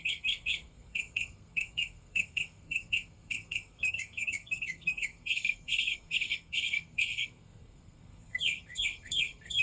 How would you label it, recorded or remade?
remade